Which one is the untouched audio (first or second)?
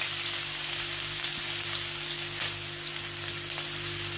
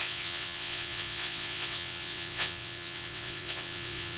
first